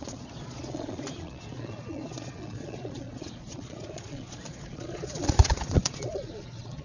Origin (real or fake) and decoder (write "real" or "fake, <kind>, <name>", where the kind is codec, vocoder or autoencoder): fake, vocoder, Vocos